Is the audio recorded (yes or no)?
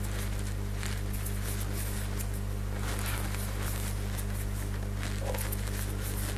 yes